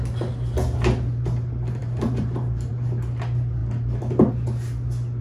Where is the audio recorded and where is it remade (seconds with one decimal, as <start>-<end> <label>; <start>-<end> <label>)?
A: 0.0-1.8 recorded; 1.8-2.7 remade; 2.7-3.6 recorded; 3.6-4.3 remade; 4.3-5.2 recorded